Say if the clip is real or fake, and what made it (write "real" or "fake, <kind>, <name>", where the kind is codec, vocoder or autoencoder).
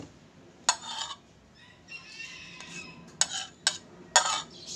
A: real